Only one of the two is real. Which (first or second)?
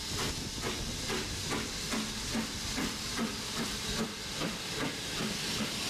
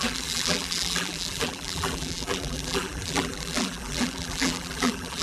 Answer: first